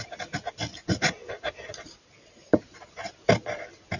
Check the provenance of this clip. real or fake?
real